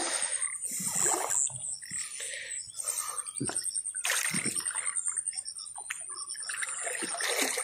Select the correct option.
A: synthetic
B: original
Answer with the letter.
B